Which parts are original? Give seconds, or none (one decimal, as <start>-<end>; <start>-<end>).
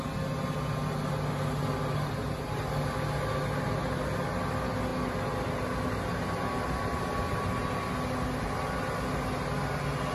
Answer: 0.0-10.1